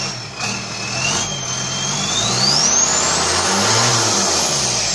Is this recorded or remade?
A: recorded